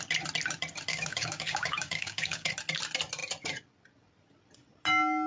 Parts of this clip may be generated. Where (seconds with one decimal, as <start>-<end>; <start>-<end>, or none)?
0.9-2.5